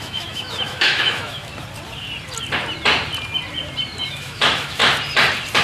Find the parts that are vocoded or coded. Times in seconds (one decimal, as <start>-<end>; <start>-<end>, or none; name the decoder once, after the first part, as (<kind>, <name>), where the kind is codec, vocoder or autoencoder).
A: 0.0-1.5 (autoencoder, DAC-VAE); 4.1-4.8